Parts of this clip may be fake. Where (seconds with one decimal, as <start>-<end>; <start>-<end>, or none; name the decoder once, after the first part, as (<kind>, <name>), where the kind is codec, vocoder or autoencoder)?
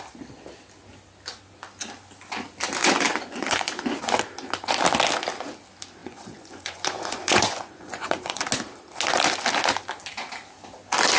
2.8-4.0 (vocoder, Vocos); 6.0-8.4